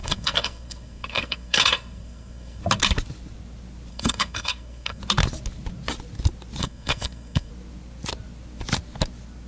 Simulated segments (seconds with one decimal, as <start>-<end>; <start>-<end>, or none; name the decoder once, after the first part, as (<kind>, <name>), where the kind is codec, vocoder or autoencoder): 0.0-2.6 (codec, SNAC); 3.9-5.0; 6.6-7.5